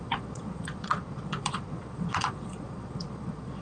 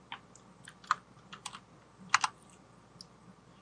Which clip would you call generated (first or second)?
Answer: first